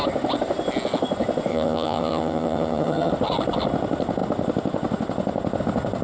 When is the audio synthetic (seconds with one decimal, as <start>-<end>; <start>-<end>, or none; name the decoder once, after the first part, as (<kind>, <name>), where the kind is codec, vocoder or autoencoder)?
1.5-3.1 (vocoder, HiFi-GAN)

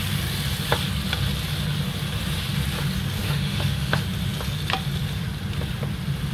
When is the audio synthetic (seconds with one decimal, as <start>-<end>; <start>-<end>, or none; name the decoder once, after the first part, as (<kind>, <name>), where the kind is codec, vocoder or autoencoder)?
3.2-3.9 (autoencoder, DAC-VAE)

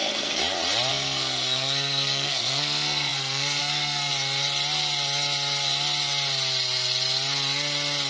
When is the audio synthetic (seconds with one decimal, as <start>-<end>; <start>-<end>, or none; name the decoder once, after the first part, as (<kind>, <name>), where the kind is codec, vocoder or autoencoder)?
0.0-0.4 (codec, SNAC); 0.9-4.1

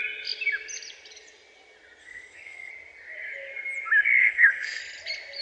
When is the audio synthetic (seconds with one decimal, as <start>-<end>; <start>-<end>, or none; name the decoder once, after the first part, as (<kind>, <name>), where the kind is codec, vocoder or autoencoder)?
2.0-2.7 (codec, SNAC); 4.2-4.8

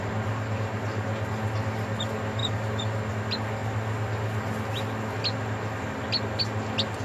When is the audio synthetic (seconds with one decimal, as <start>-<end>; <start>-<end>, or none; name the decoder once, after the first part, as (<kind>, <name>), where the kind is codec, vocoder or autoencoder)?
none

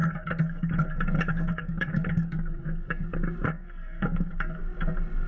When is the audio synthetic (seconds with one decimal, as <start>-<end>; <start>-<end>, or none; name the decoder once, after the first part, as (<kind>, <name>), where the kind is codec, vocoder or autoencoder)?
0.0-4.6 (codec, DAC)

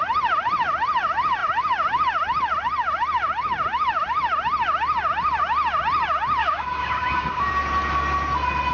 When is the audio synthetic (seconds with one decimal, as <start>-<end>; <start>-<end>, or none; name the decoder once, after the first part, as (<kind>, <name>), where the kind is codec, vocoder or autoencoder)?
6.4-7.5 (codec, DAC)

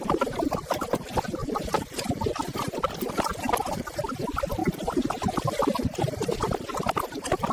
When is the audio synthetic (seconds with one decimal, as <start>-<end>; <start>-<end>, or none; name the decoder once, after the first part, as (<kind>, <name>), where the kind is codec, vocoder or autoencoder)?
none